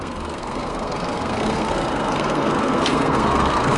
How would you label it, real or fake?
fake